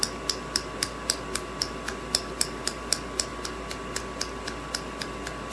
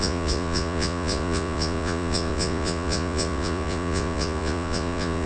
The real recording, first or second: first